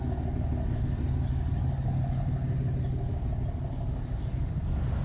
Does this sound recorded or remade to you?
recorded